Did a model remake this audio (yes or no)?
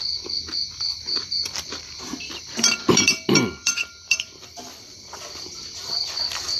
yes